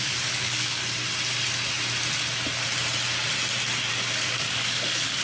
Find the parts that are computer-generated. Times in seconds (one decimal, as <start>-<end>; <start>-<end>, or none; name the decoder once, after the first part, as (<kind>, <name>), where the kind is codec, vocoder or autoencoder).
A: 0.0-0.8 (codec, DAC); 3.9-5.2